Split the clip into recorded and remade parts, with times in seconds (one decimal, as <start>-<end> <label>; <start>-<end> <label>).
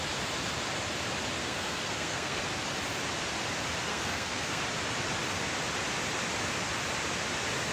0.0-1.4 recorded; 1.4-2.4 remade; 2.4-3.9 recorded; 3.9-4.6 remade; 4.6-7.7 recorded